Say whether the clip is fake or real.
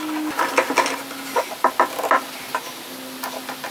real